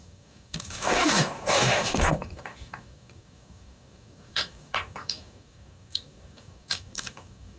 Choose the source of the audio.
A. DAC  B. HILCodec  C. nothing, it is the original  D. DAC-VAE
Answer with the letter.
A